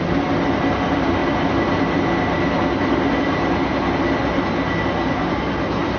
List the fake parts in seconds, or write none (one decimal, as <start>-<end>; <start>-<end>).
none